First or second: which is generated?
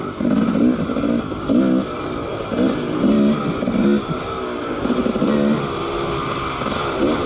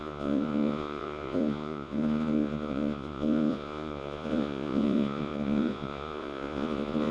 second